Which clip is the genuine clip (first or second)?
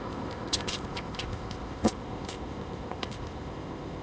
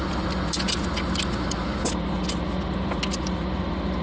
second